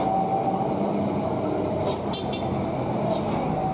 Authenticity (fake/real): real